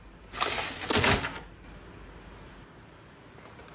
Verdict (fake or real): real